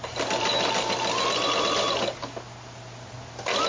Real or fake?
real